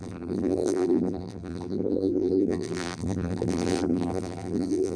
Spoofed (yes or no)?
yes